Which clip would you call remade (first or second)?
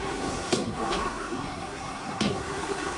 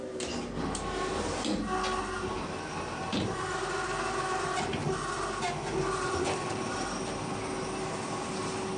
first